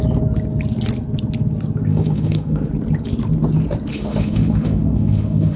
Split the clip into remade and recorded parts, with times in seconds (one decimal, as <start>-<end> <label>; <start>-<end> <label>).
0.0-1.9 recorded; 1.9-2.7 remade; 2.7-3.9 recorded; 3.9-5.6 remade